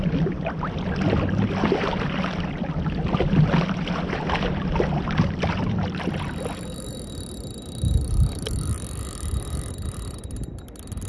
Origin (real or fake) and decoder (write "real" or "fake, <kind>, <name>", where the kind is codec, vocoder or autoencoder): real